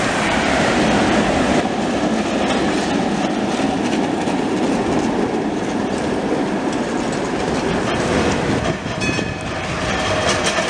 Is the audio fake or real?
real